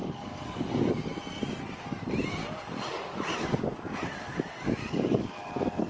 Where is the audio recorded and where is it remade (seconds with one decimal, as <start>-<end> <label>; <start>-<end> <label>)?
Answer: 0.0-0.9 remade; 0.9-2.4 recorded; 2.4-5.9 remade